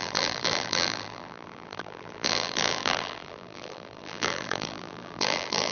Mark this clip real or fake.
fake